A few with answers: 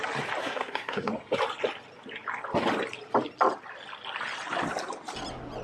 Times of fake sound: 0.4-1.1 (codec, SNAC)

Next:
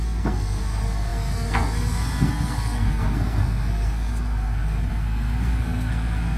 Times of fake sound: 0.0-6.4 (codec, SNAC)

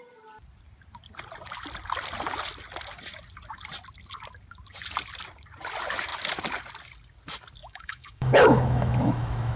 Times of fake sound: 7.6-9.6 (autoencoder, DAC-VAE)

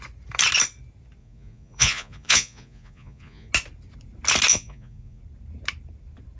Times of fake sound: 1.2-3.5 (vocoder, Vocos); 4.5-5.2

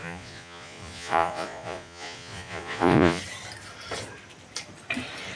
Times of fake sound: 0.0-3.2 (vocoder, Vocos)

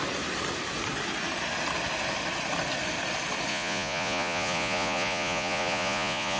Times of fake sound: 3.5-6.4 (vocoder, Vocos)

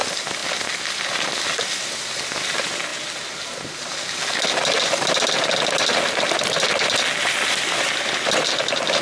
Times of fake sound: none